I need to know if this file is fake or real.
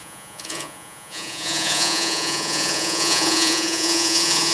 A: fake